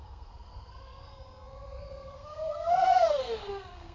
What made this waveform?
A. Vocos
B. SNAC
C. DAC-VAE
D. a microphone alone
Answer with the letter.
B